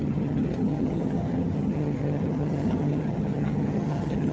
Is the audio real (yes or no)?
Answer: no